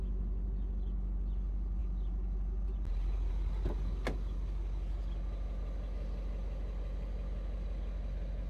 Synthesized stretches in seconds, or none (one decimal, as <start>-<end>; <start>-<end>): none